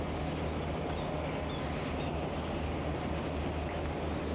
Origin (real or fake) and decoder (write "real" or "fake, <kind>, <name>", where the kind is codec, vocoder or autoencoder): real